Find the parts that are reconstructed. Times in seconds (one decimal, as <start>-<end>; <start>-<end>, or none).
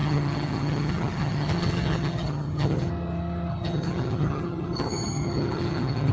0.0-2.9; 3.5-6.1